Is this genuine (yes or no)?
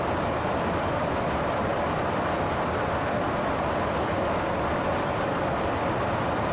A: no